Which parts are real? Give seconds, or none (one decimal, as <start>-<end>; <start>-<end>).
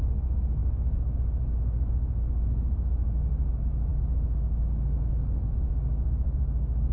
0.0-6.9